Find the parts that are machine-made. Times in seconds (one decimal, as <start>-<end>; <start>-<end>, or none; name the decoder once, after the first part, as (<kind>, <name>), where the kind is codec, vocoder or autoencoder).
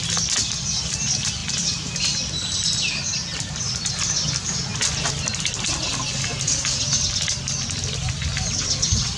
none